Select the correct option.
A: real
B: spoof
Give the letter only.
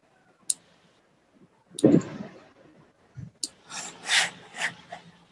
A